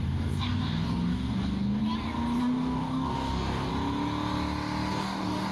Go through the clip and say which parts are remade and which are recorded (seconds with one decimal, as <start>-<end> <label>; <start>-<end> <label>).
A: 0.0-1.8 remade; 1.8-2.4 recorded; 2.4-3.7 remade; 3.7-4.9 recorded; 4.9-5.5 remade